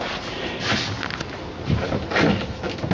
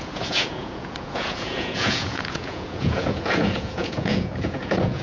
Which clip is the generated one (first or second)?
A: second